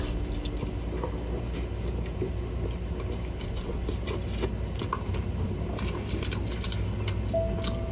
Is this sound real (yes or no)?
yes